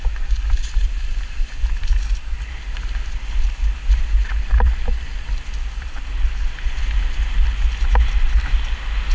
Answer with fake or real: real